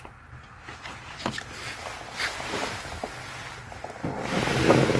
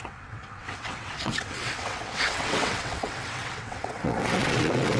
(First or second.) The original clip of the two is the first